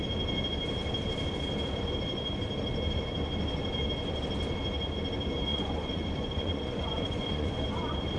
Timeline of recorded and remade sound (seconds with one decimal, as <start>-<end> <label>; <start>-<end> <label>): 0.0-5.5 recorded; 5.5-7.5 remade; 7.5-8.2 recorded